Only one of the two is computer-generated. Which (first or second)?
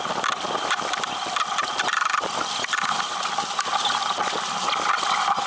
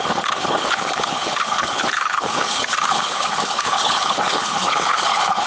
second